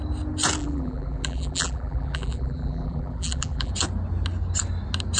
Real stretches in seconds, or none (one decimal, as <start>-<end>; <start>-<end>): 0.0-0.6; 3.7-5.2